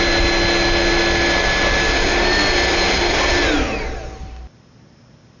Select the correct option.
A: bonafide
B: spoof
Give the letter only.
A